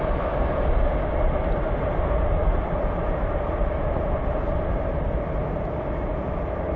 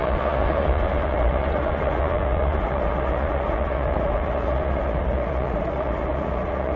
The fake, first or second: second